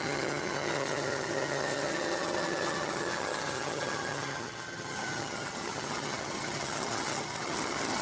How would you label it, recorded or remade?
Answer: remade